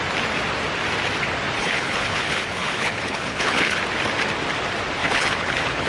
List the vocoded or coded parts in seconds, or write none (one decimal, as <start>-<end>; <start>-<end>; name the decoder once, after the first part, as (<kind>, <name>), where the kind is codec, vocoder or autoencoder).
1.6-3.8 (codec, HILCodec); 5.0-5.9